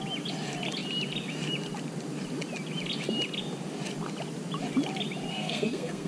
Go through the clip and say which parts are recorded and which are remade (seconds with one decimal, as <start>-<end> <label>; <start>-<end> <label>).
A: 0.0-5.3 recorded; 5.3-6.1 remade